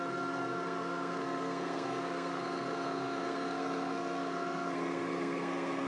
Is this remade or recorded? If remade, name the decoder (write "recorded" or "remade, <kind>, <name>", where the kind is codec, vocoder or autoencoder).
remade, codec, SNAC